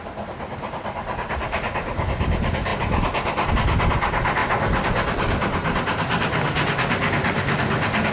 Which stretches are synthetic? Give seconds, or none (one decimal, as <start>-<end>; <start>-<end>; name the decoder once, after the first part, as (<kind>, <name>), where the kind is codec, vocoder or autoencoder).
none